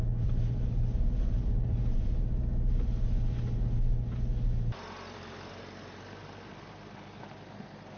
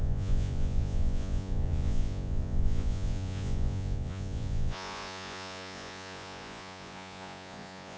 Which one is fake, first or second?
second